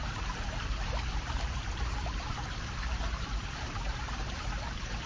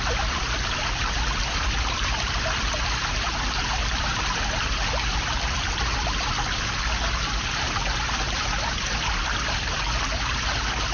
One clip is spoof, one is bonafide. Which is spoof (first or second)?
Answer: first